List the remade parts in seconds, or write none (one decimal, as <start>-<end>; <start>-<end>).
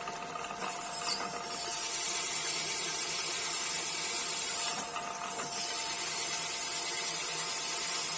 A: none